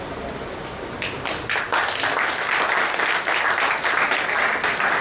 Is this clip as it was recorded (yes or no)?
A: yes